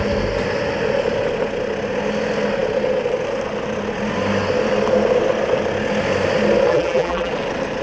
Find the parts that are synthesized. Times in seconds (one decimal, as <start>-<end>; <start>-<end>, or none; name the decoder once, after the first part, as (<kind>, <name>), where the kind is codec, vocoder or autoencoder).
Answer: 6.7-7.3 (vocoder, BigVGAN v2)